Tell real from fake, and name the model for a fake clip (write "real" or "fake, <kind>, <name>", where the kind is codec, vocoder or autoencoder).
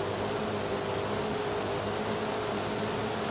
real